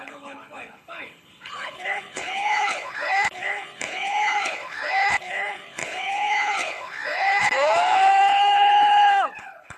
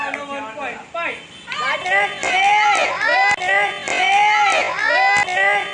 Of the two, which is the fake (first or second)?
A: first